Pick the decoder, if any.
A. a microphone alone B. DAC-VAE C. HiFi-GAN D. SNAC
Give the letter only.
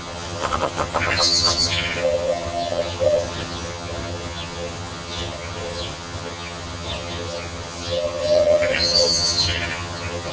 C